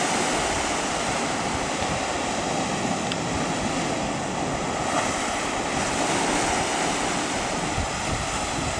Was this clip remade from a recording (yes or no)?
no